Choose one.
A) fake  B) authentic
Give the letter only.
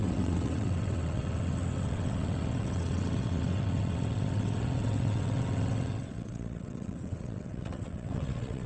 A